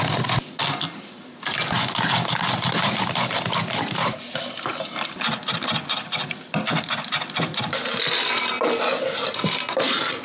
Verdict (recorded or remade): recorded